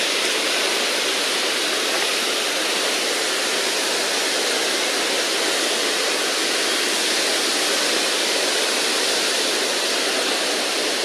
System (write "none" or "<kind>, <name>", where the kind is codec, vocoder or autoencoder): none